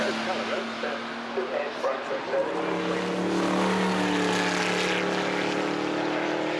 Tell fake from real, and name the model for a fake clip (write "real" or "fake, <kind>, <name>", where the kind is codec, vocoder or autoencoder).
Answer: real